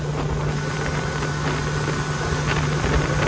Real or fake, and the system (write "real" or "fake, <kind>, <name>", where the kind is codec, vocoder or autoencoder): real